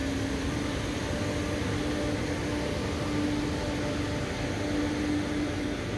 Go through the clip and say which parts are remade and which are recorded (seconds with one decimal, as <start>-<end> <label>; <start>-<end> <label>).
0.0-6.0 recorded